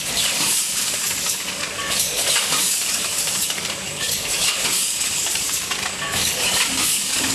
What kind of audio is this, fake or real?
fake